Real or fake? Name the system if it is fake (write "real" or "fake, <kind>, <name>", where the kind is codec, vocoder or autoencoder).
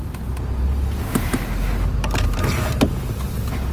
real